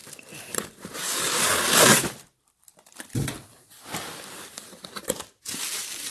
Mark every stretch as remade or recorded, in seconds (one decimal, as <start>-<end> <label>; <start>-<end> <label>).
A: 0.0-6.1 remade